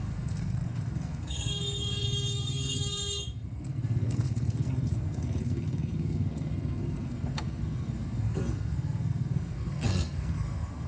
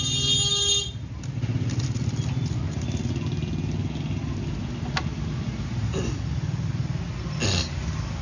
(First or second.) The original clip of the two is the second